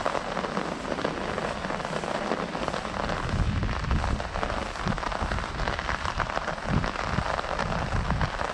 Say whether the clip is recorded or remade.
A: recorded